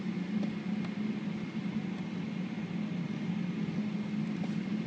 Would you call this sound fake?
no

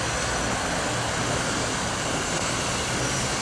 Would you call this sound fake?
no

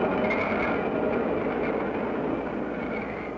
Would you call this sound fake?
no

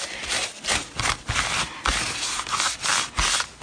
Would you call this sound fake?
no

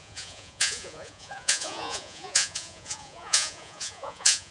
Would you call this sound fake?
yes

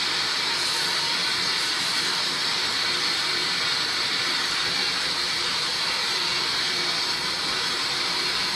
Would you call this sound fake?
yes